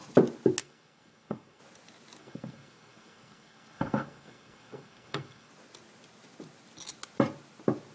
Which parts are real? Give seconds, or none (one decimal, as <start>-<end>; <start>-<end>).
0.0-0.6; 1.6-2.2; 5.5-7.9